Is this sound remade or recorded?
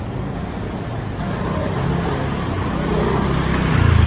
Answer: recorded